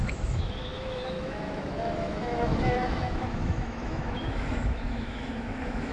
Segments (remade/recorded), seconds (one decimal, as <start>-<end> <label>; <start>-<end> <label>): 0.0-5.9 remade